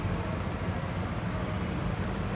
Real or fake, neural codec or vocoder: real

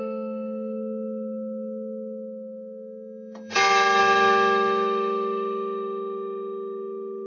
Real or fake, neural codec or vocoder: fake, autoencoder, DAC-VAE